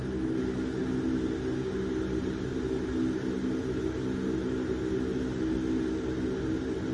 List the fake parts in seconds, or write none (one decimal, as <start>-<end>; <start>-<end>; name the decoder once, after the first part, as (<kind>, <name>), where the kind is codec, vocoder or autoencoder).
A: none